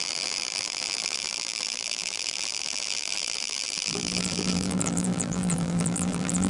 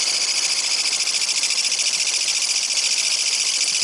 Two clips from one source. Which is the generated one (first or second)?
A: first